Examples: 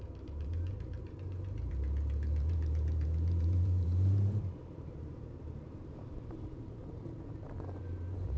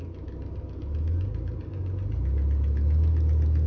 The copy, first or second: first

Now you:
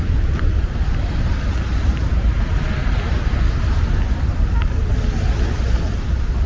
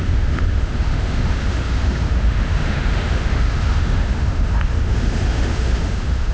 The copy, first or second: second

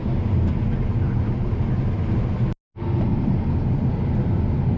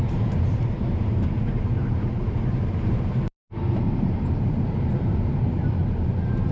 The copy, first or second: second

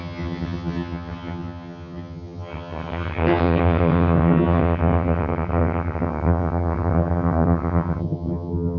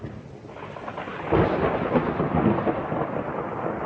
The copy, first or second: first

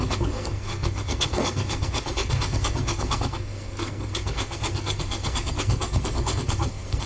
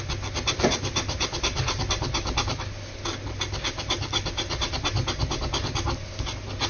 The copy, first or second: first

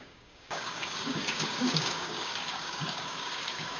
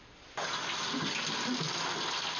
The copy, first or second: first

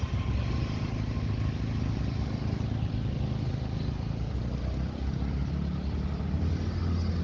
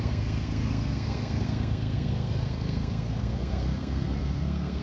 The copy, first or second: second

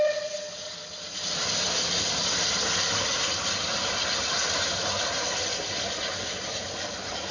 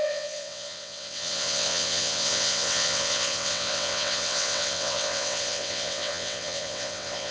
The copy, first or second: second